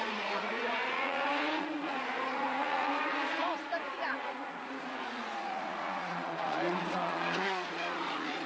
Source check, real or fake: fake